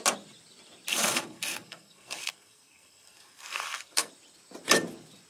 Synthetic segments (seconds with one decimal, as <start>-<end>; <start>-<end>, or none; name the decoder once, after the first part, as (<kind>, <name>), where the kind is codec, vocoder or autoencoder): 0.9-4.1 (codec, SNAC)